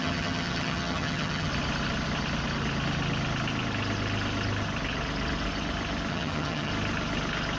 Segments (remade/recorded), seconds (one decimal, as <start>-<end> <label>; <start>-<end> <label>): 0.0-1.5 remade; 1.5-6.1 recorded; 6.1-6.7 remade; 6.7-7.6 recorded